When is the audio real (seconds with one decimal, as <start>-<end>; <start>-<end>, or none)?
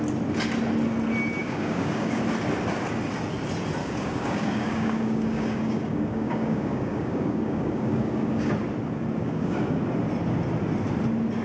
0.0-1.4; 2.2-3.8; 8.5-9.2; 9.8-11.4